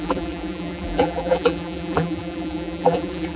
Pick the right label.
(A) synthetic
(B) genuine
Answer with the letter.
A